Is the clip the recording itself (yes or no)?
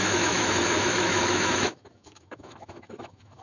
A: no